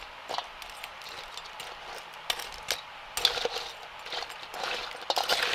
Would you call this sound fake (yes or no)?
no